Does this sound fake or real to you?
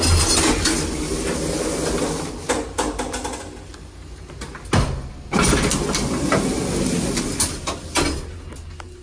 real